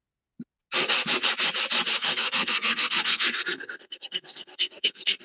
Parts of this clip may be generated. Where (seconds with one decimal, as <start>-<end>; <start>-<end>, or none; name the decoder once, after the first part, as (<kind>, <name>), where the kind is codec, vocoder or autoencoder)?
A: 2.0-5.2 (codec, SNAC)